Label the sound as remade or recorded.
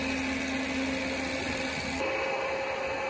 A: recorded